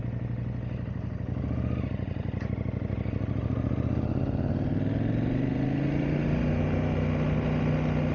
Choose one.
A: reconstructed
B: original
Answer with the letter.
B